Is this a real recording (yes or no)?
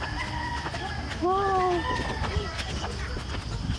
yes